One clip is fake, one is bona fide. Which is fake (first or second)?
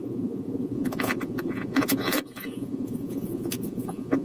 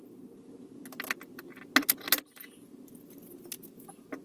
first